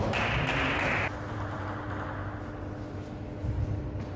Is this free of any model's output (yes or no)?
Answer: yes